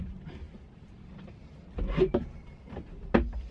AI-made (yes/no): no